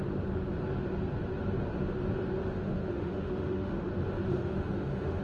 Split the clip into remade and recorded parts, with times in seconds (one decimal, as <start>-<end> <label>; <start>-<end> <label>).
0.0-2.4 recorded; 2.4-3.9 remade; 3.9-4.3 recorded; 4.3-5.2 remade